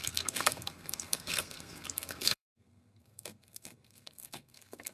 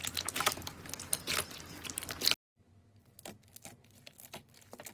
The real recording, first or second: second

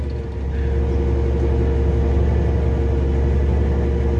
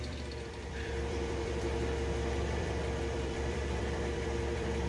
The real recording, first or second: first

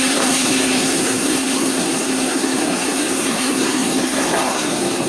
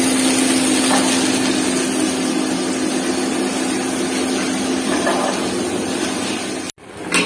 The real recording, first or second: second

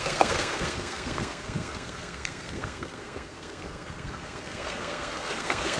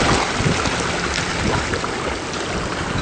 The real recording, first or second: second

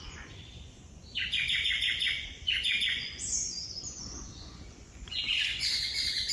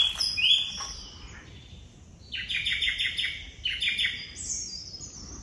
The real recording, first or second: second